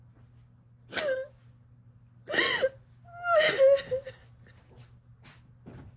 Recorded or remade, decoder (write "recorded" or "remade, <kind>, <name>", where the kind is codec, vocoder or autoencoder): recorded